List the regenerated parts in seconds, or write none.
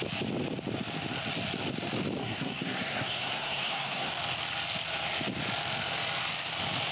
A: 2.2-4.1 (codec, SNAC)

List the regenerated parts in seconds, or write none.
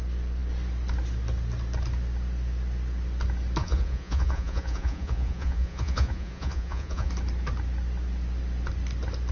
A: 3.6-7.1 (vocoder, Vocos)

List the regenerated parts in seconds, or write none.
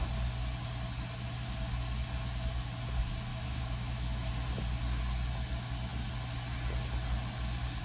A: 3.3-4.3 (autoencoder, DAC-VAE)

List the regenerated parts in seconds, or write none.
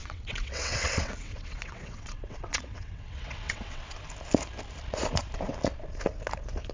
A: 0.0-4.0 (vocoder, WaveNeXt)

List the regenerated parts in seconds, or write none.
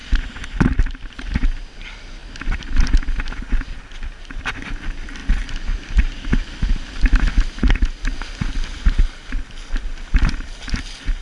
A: none